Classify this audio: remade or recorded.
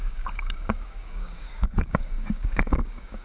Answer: remade